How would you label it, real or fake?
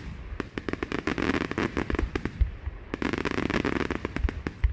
real